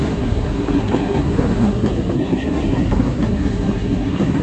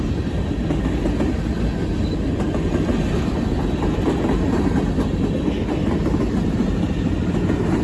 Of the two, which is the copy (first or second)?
first